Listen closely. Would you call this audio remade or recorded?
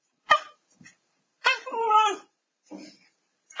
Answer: remade